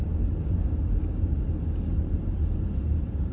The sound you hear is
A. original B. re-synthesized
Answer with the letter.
B